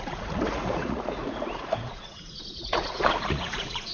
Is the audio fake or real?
fake